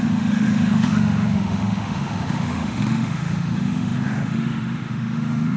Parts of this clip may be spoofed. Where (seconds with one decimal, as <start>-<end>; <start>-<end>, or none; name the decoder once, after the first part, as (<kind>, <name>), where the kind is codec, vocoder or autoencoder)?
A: 0.0-5.6 (autoencoder, DAC-VAE)